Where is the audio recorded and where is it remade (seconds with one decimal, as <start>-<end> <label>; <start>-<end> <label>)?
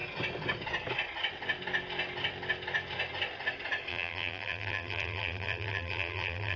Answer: 0.0-3.9 recorded; 3.9-6.6 remade